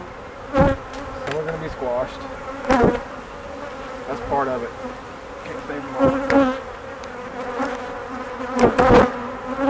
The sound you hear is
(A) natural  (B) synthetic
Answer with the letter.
A